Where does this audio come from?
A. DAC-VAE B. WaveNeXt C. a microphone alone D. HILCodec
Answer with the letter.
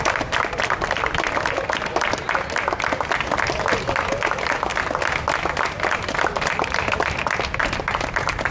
C